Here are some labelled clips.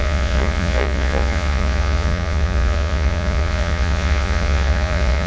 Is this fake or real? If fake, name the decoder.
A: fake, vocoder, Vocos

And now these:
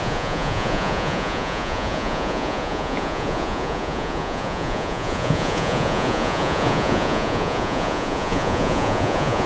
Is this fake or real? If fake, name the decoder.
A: fake, vocoder, Vocos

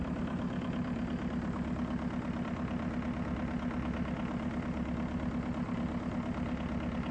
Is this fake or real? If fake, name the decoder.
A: real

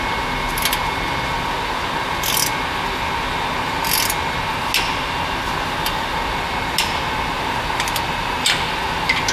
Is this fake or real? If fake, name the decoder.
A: real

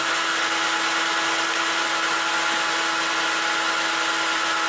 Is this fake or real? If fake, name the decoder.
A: real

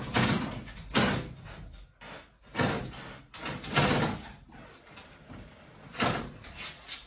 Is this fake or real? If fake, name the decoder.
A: real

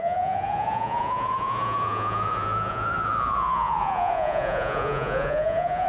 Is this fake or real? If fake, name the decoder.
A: fake, vocoder, Vocos